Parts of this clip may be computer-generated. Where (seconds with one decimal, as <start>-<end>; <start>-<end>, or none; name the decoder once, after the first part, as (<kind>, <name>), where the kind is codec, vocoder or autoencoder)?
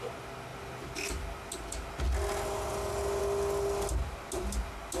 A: none